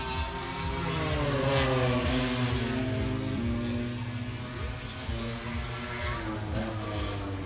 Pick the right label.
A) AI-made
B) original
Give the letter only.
B